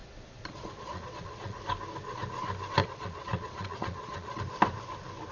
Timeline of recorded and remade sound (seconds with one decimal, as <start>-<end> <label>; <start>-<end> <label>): 0.0-1.6 remade; 1.6-2.8 recorded; 2.8-4.4 remade; 4.4-5.3 recorded